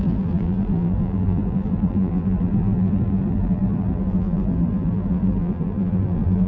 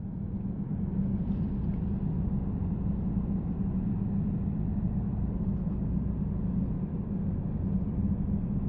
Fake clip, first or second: first